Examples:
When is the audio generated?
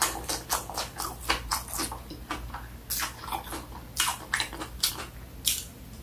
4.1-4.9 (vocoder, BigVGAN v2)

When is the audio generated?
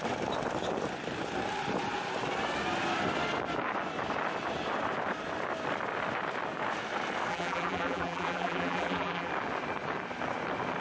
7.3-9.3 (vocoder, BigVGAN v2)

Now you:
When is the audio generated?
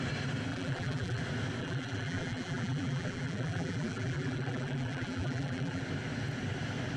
0.5-1.2 (vocoder, BigVGAN v2); 1.6-5.8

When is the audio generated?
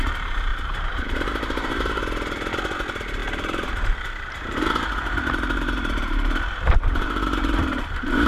0.5-2.0 (vocoder, BigVGAN v2); 3.2-8.3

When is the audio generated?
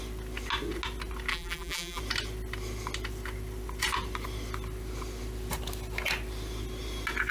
1.3-2.0 (vocoder, BigVGAN v2)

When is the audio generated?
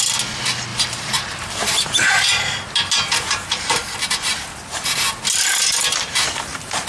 0.7-3.8 (vocoder, BigVGAN v2)